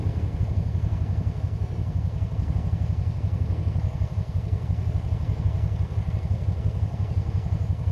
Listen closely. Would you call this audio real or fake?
fake